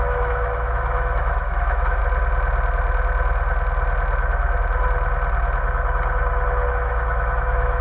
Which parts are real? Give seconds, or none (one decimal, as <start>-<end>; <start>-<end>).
2.0-6.7